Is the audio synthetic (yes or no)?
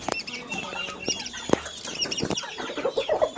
no